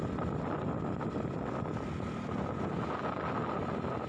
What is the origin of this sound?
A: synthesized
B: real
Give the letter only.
B